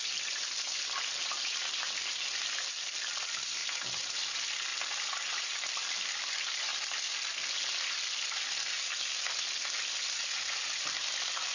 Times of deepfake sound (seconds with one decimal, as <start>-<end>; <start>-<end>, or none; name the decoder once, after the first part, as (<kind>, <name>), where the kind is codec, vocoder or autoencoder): 0.0-3.6 (vocoder, BigVGAN v2); 4.2-4.7; 5.4-6.7; 9.6-11.5